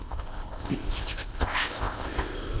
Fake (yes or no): yes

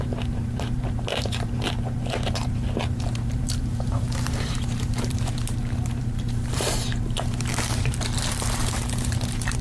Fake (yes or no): yes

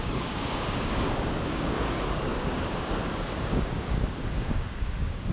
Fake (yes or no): yes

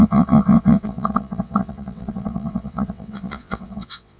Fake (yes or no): yes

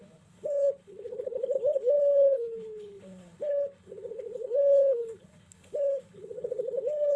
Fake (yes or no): yes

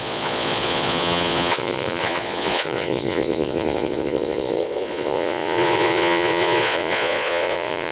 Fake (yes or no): yes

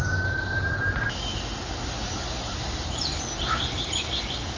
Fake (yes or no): no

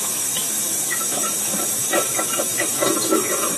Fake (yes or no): yes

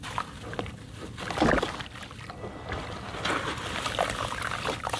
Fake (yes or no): no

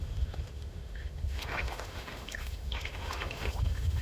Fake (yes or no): yes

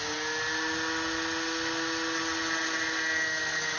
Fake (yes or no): no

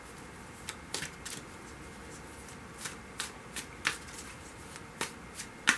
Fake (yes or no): no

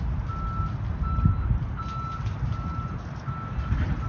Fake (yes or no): no